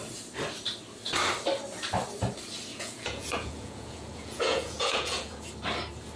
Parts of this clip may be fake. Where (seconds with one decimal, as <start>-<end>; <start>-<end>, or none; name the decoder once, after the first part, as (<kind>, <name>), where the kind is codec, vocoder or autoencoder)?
2.7-5.5 (vocoder, Vocos)